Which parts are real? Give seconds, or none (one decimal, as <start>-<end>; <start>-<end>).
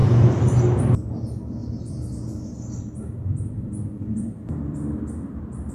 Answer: 0.6-1.6; 5.0-5.7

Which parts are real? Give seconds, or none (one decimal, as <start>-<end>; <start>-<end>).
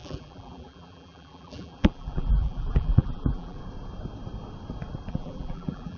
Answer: 3.6-5.1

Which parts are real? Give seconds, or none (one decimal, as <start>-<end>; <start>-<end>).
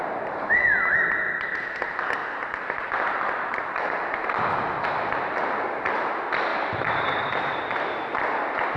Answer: 0.0-2.2; 6.1-6.5; 7.6-8.8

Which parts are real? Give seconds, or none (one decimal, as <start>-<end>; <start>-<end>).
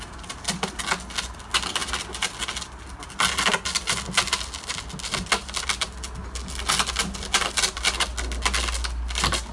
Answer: 0.0-1.8; 2.4-9.5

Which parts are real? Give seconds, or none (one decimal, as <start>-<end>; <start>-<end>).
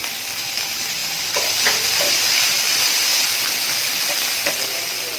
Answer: 0.0-1.0; 2.1-3.1; 4.0-5.2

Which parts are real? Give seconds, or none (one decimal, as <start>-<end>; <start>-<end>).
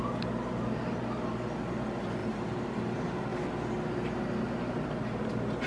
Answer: 0.0-2.2; 2.8-5.7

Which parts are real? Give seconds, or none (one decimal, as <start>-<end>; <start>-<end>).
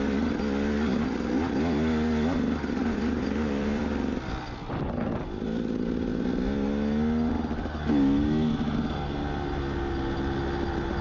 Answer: 0.0-2.8; 3.8-11.0